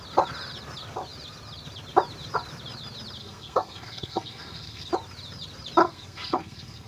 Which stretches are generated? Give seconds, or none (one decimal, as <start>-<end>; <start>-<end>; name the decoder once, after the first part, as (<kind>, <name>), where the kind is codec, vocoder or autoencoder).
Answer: 3.2-4.9 (codec, SNAC); 5.8-6.9